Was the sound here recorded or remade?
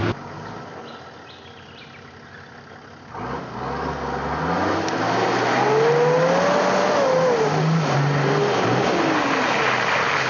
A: recorded